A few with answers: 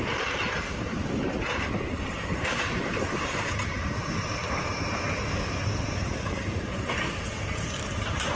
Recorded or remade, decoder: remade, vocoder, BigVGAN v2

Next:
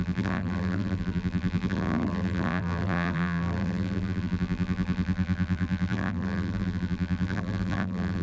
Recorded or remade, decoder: remade, vocoder, BigVGAN v2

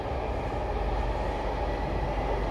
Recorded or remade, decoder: recorded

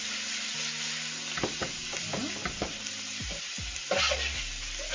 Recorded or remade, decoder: recorded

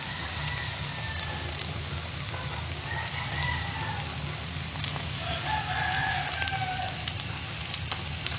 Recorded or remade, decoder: recorded